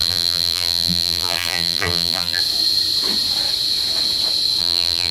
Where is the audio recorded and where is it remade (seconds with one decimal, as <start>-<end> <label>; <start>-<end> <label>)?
0.0-2.4 remade; 2.4-4.6 recorded; 4.6-5.1 remade